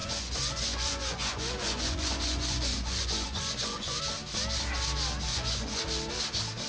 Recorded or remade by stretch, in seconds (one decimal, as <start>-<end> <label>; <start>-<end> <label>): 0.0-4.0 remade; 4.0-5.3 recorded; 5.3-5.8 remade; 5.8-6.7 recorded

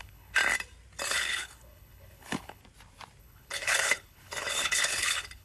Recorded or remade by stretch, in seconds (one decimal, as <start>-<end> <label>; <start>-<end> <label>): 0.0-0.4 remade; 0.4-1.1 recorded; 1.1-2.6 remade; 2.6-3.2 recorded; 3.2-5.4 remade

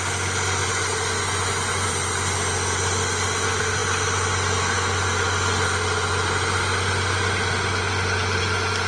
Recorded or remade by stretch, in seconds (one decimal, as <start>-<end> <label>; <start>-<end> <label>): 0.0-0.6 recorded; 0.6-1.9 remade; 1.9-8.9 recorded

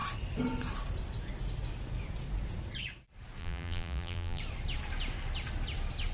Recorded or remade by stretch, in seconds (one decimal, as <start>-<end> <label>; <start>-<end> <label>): 0.0-3.4 recorded; 3.4-4.4 remade; 4.4-6.1 recorded

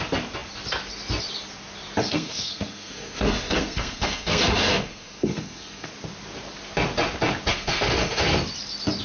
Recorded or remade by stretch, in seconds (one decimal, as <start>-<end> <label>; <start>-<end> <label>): 0.0-2.0 recorded; 2.0-5.9 remade; 5.9-7.5 recorded; 7.5-8.2 remade; 8.2-9.0 recorded

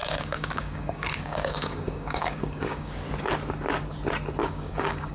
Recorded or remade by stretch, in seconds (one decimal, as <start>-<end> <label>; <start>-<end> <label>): 0.0-3.1 remade; 3.1-4.4 recorded; 4.4-5.1 remade